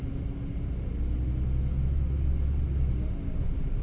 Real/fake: real